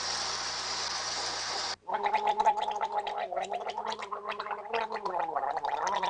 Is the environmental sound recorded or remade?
recorded